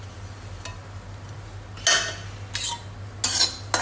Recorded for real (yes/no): yes